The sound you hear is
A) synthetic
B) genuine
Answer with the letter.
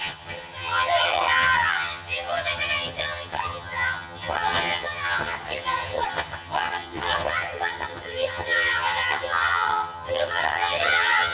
A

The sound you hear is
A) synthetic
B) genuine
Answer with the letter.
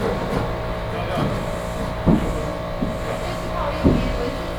B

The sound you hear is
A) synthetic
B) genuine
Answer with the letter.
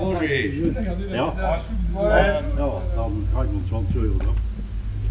B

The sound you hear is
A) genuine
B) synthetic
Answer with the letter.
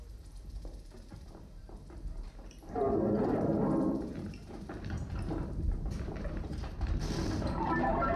B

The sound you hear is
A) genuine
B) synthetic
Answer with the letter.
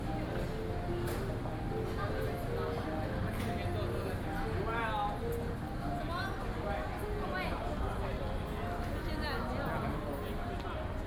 A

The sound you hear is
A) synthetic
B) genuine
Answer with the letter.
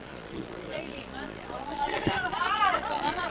A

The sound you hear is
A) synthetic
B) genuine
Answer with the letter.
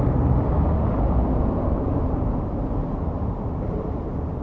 B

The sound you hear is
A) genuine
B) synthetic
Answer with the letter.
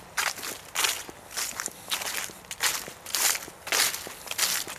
A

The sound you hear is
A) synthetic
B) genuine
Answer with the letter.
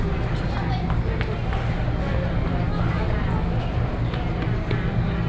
B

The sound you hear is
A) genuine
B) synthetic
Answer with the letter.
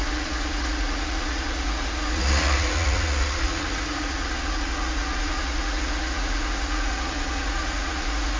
B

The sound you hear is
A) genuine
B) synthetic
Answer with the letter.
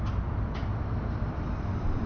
A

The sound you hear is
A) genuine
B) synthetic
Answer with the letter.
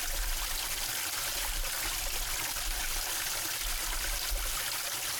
A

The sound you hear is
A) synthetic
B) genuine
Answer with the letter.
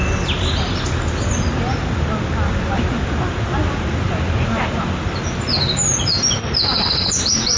B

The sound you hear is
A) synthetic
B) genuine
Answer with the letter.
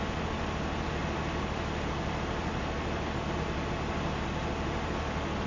B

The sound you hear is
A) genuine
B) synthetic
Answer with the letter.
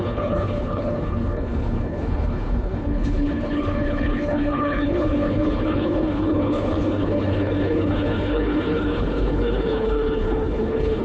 B